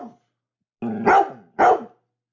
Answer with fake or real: real